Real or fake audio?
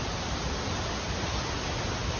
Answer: real